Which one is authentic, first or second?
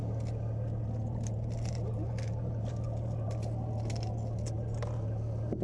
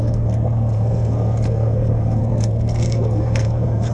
first